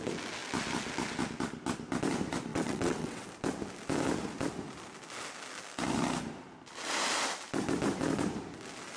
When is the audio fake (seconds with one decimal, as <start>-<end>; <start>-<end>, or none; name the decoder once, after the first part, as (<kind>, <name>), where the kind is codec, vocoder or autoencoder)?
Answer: 2.5-3.3 (vocoder, WaveNeXt)